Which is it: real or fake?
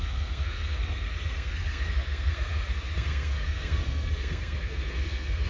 fake